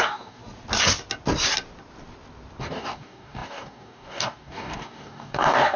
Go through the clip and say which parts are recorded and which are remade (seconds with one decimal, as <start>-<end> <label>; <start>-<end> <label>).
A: 0.0-0.4 remade; 0.4-2.6 recorded; 2.6-5.8 remade